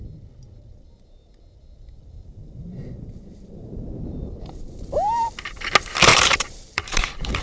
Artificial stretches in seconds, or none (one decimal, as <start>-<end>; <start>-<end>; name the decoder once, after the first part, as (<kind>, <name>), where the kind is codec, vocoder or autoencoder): 2.0-5.1 (vocoder, BigVGAN v2); 6.1-7.4